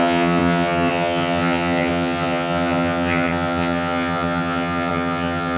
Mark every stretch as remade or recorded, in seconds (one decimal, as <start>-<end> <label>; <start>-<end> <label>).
0.0-5.6 remade